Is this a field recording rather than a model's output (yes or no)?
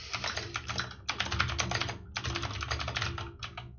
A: yes